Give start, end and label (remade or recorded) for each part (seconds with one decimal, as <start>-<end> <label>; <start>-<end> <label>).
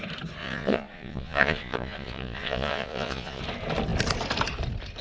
0.0-0.4 recorded; 0.4-3.4 remade; 3.4-5.0 recorded